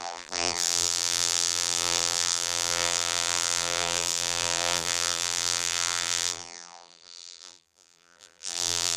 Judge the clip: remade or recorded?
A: remade